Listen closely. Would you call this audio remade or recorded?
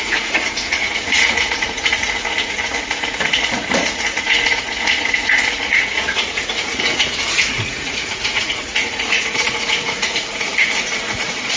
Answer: remade